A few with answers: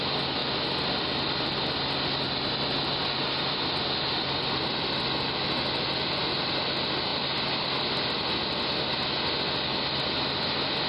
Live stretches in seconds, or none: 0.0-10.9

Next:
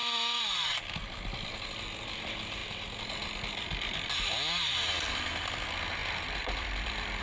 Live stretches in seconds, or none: 0.0-6.0

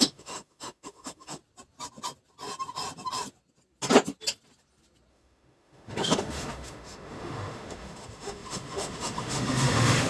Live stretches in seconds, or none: 1.4-5.1

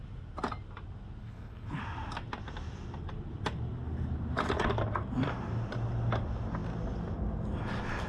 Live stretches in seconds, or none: 0.0-1.2; 1.8-8.1

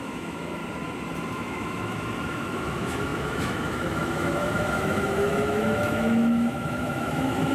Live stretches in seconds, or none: 0.6-1.3